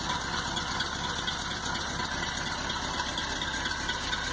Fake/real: fake